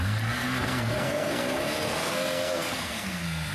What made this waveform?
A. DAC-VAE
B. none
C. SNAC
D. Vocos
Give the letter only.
C